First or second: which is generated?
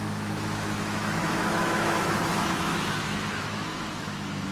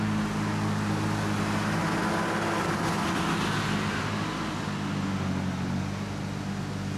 first